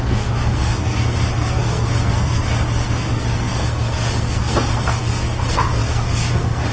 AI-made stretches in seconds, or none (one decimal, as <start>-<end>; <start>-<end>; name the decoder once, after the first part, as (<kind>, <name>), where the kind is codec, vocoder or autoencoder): 0.0-6.7 (codec, SNAC)